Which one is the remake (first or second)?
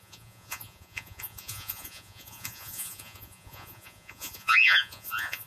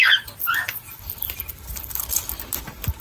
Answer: first